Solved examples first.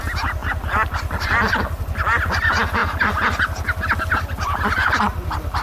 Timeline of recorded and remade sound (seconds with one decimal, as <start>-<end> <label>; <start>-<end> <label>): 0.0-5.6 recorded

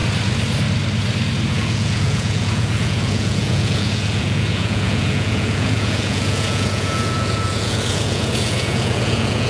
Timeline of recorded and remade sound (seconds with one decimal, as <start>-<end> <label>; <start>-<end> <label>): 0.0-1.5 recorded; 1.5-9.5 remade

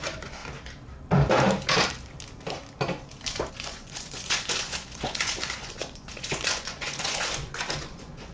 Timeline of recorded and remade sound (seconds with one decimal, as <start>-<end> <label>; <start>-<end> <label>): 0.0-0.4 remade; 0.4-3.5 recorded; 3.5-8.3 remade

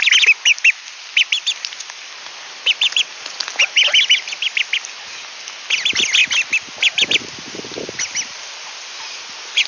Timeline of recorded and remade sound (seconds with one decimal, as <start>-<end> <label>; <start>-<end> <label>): 0.0-9.7 recorded